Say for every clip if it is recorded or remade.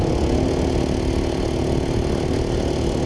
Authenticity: recorded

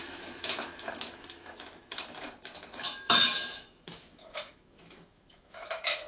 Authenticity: remade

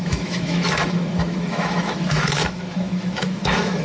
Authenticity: remade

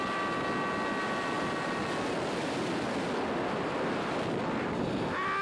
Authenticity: recorded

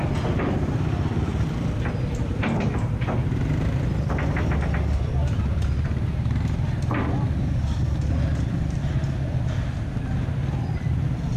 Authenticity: recorded